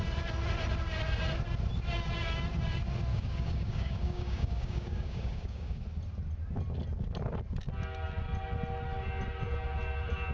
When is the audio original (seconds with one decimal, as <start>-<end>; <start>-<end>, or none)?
0.0-3.1; 5.8-10.3